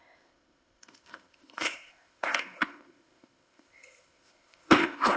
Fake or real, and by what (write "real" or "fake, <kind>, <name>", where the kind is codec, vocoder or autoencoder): fake, codec, ZipCodec